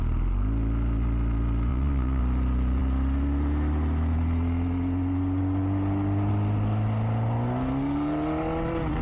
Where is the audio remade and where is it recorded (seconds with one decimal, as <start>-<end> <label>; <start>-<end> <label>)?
0.0-1.7 recorded; 1.7-2.2 remade; 2.2-9.0 recorded